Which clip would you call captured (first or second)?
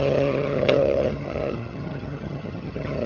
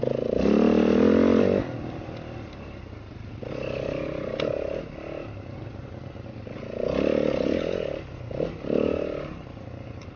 second